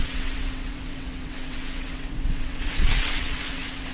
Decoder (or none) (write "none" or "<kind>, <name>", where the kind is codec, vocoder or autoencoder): vocoder, WaveNeXt